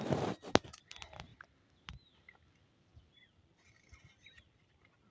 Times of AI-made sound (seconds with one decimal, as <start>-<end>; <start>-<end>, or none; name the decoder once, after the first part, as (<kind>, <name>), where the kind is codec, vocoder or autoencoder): none